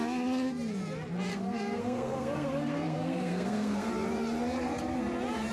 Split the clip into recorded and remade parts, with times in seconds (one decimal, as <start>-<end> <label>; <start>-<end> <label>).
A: 0.0-1.3 recorded; 1.3-3.9 remade; 3.9-5.5 recorded